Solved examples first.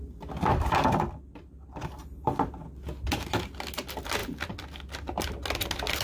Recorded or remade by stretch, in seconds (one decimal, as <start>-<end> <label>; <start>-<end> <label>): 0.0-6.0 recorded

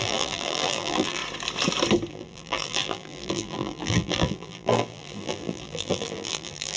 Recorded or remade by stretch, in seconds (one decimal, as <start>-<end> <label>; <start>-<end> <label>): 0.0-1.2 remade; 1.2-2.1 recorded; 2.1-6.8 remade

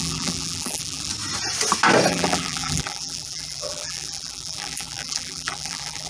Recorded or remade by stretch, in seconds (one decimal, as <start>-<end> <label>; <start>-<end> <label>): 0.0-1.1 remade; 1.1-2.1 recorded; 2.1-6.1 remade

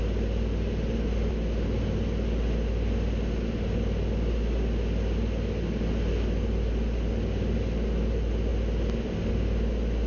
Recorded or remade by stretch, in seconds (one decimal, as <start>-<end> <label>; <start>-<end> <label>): 0.0-10.1 recorded

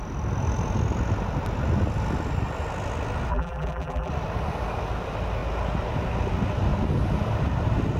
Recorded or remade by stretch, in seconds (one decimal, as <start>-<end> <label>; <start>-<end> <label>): 0.0-3.3 recorded; 3.3-4.1 remade; 4.1-8.0 recorded